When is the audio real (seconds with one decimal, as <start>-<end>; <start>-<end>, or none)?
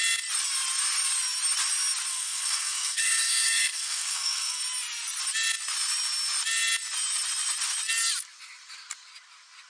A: 0.0-2.1; 4.6-9.7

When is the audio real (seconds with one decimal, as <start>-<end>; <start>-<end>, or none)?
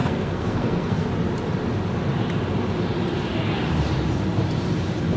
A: 1.1-5.2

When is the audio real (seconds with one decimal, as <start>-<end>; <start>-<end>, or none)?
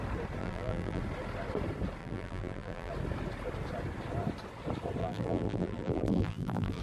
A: 0.0-0.4; 1.0-2.0; 2.9-5.0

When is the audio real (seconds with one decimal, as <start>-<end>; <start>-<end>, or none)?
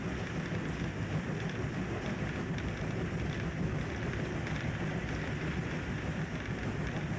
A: 0.0-7.2